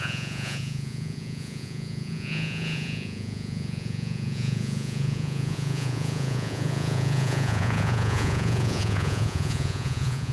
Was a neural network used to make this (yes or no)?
yes